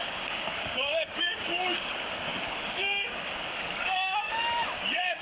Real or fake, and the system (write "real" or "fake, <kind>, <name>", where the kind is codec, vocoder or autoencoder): fake, codec, DAC